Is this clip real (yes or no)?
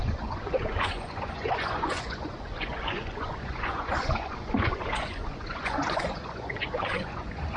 no